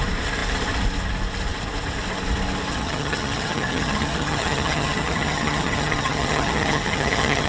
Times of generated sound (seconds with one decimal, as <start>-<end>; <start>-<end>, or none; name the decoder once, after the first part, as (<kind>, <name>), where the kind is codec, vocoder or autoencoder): 2.7-7.5 (vocoder, HiFi-GAN)

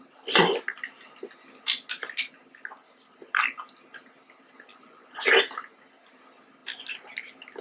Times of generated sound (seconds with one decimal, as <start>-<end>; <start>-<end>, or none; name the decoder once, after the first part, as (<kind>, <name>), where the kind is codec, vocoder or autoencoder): 4.7-5.3 (vocoder, Vocos)